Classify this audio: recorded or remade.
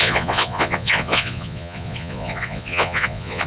remade